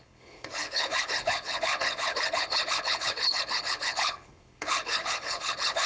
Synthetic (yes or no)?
yes